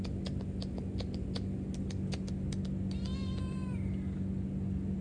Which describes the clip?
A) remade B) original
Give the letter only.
B